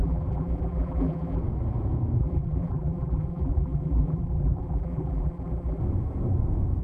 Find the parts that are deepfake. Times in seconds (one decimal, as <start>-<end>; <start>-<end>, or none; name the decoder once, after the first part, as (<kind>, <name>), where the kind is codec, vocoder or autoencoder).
0.0-1.4 (vocoder, BigVGAN v2); 2.2-5.8